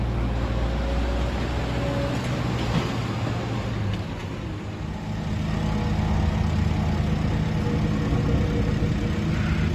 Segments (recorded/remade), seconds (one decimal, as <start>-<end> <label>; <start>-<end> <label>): 0.0-9.7 recorded

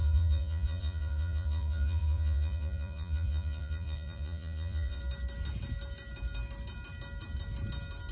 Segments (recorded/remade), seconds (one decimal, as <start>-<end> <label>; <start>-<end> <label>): 0.0-5.0 remade; 5.0-8.1 recorded

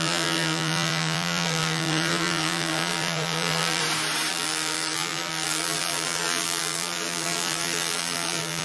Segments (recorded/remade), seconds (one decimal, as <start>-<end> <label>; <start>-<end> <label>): 0.0-3.8 remade; 3.8-4.3 recorded; 4.3-8.6 remade

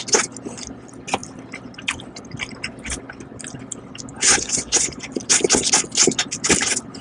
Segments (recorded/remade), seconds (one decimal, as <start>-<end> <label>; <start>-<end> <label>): 0.0-4.1 recorded; 4.1-5.1 remade; 5.1-7.0 recorded

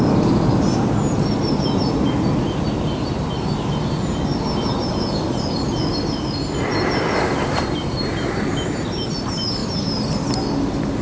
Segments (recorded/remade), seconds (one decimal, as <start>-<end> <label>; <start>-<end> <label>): 0.0-6.7 recorded; 6.7-9.1 remade; 9.1-9.6 recorded; 9.6-10.4 remade; 10.4-11.0 recorded

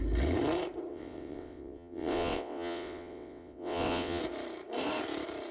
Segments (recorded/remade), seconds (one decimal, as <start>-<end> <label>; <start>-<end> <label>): 0.0-0.9 recorded; 0.9-4.2 remade; 4.2-5.5 recorded